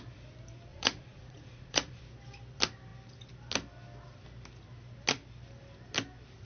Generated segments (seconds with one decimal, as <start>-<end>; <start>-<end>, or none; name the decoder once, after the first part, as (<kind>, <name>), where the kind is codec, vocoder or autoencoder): 0.7-2.0 (vocoder, Vocos)